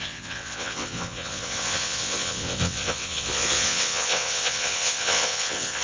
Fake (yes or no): yes